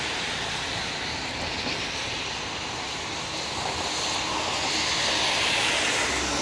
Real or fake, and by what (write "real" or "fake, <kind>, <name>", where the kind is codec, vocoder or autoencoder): real